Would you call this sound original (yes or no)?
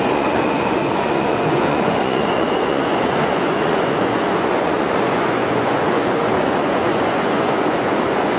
no